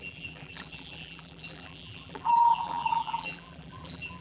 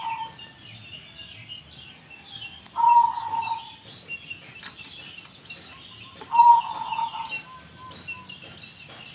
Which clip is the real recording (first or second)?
second